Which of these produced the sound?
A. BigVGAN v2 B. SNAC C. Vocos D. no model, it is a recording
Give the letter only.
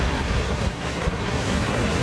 B